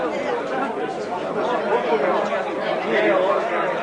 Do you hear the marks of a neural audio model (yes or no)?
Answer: no